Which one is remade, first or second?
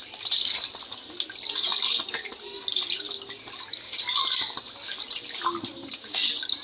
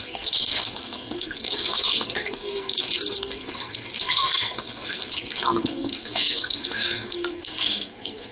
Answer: second